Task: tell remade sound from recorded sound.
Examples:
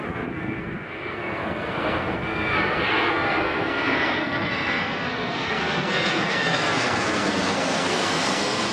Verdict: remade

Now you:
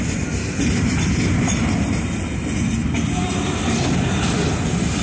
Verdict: recorded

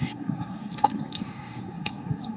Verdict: remade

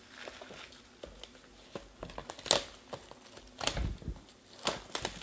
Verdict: recorded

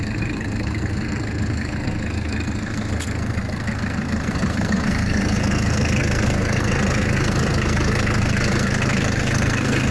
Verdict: remade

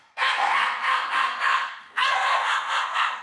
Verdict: remade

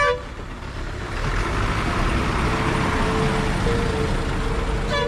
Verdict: recorded